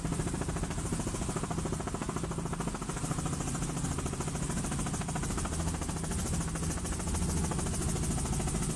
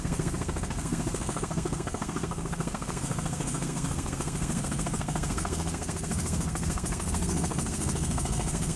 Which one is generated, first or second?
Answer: second